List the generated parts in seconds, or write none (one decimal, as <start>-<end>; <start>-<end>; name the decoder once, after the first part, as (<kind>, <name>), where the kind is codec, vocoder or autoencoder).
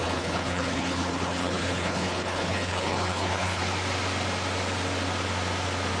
0.0-3.6 (codec, HILCodec)